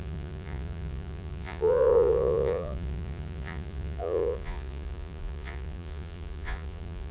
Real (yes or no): no